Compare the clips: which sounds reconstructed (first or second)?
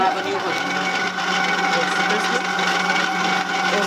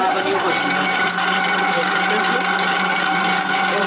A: second